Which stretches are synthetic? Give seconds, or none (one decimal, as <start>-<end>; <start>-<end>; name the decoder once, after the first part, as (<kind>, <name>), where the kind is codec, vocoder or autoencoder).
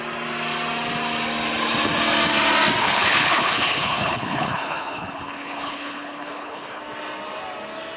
2.8-6.8 (codec, HILCodec)